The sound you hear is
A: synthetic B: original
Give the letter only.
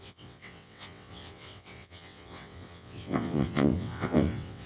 A